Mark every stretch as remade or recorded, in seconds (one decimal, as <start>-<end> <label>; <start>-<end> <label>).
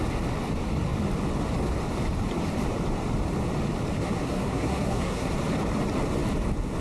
0.0-4.0 recorded; 4.0-5.3 remade; 5.3-6.8 recorded